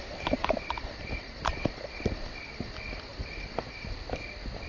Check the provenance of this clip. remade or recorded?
recorded